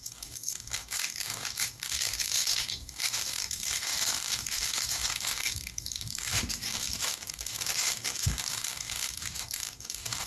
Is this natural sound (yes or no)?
no